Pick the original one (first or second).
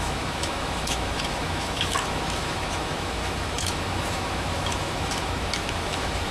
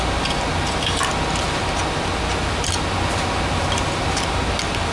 second